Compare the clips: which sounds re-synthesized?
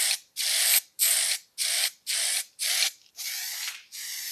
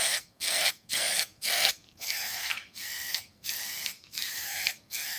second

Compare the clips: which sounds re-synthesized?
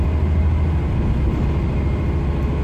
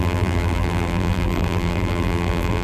second